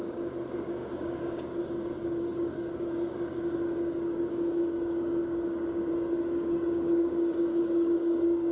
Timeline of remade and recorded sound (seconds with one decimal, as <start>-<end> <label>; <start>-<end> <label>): 0.0-8.5 remade